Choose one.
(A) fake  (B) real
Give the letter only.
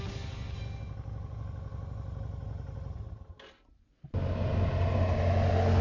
B